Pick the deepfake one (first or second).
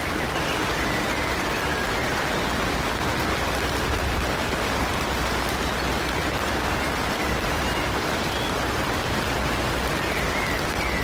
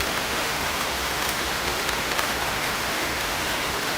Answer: second